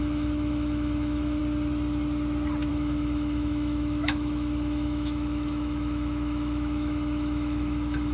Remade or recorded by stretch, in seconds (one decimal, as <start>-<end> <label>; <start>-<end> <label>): 0.0-1.4 remade; 1.4-2.7 recorded; 2.7-8.1 remade